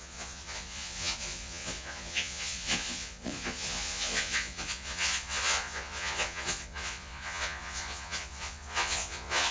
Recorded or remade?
remade